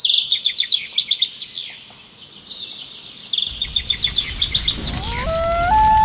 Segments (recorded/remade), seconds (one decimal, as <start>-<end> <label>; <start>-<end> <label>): 0.0-1.2 remade; 1.2-6.0 recorded